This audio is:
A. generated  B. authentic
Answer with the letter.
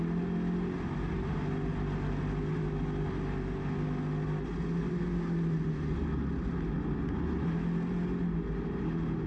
B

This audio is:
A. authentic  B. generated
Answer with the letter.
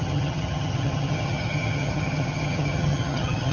B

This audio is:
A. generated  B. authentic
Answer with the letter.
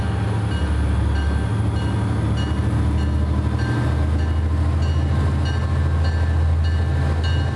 B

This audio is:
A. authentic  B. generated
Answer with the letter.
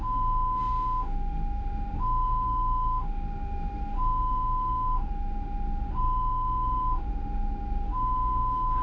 B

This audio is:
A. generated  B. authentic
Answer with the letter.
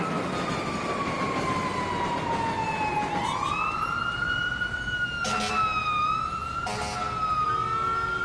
B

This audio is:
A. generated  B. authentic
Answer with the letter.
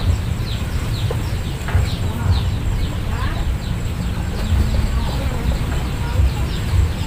B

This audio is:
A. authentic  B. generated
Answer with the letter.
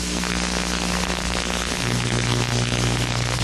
B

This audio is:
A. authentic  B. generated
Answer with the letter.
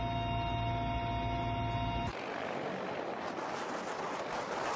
A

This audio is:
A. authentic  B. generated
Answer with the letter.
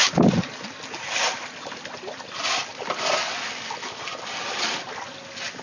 A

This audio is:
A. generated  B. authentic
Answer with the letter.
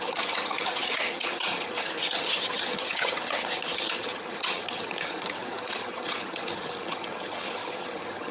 A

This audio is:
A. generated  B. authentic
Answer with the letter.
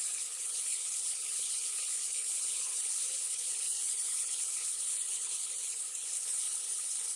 A